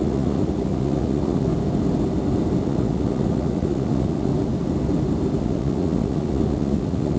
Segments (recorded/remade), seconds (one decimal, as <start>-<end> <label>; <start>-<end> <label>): 0.0-1.5 remade; 1.5-2.6 recorded; 2.6-4.3 remade; 4.3-5.4 recorded; 5.4-7.2 remade